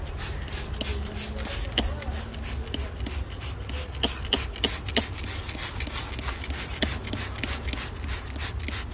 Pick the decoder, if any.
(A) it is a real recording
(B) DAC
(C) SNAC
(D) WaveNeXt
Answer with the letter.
A